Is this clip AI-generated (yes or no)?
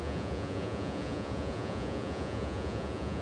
yes